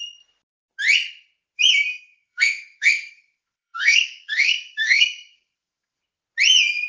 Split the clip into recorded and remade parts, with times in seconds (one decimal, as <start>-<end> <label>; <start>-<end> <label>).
0.0-1.9 recorded; 1.9-6.0 remade; 6.0-6.9 recorded